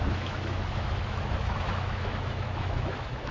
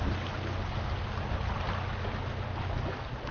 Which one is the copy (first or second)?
first